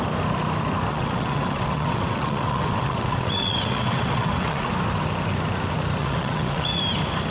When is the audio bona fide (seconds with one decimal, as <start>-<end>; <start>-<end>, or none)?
0.0-0.9; 4.7-6.0; 6.8-7.3